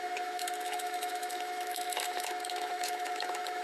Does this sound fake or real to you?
fake